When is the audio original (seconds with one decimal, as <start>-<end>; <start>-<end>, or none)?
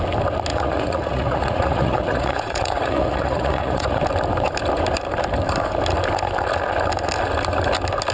0.0-0.5; 4.0-8.1